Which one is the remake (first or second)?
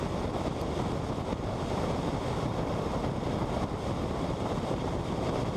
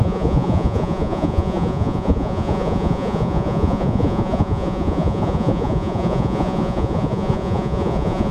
second